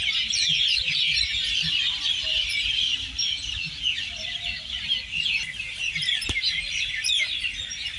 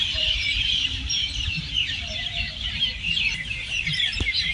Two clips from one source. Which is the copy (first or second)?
second